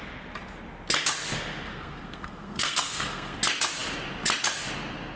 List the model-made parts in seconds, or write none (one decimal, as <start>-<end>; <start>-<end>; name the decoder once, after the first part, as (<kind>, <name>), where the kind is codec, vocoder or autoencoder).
1.7-3.4 (codec, SNAC)

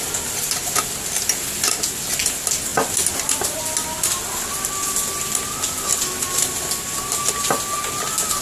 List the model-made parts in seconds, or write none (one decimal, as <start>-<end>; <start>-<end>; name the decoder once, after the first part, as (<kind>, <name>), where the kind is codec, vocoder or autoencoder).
2.7-3.6 (vocoder, BigVGAN v2)